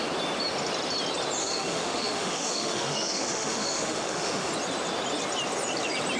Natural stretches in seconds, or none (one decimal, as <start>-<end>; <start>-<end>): 0.0-1.4; 4.5-6.2